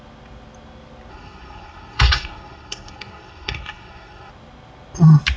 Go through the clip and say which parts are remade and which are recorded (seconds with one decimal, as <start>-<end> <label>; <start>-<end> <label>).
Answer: 0.0-1.1 recorded; 1.1-4.3 remade; 4.3-5.4 recorded